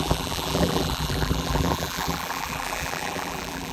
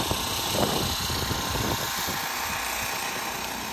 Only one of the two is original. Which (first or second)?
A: second